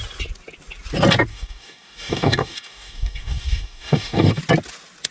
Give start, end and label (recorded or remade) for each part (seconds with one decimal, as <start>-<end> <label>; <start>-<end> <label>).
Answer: 0.0-1.3 recorded; 1.3-4.4 remade; 4.4-5.1 recorded